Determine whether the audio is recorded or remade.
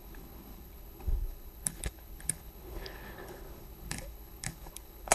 remade